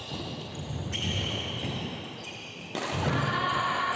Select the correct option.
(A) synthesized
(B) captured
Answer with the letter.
B